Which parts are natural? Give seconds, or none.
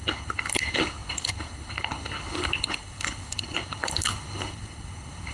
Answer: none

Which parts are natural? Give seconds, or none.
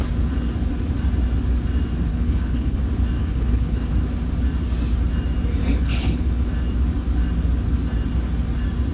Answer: 0.0-2.1; 2.8-3.2; 3.9-5.6; 6.4-8.9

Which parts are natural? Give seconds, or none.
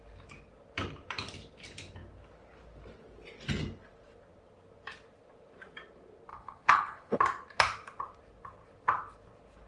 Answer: 0.0-6.3; 7.2-9.7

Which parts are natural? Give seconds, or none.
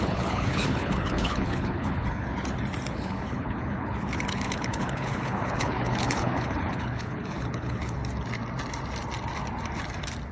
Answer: 2.3-2.9; 8.0-10.3